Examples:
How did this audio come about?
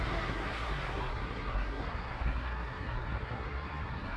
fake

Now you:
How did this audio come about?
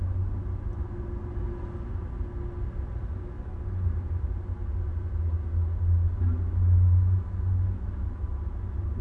real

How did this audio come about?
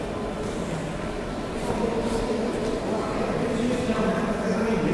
real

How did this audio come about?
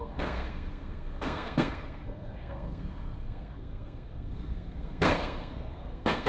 fake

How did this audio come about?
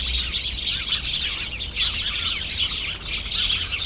real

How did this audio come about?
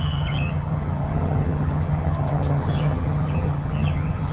fake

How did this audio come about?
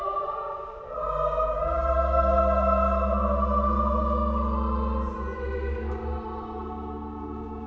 real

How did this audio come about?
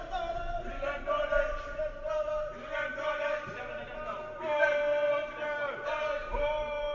real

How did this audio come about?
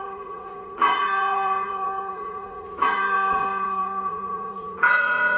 fake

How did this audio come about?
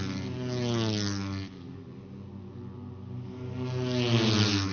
real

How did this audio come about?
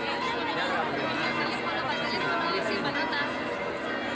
real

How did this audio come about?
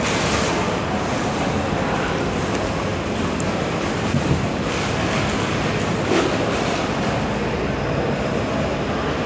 real